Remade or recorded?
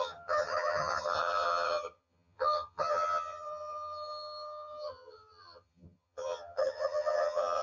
remade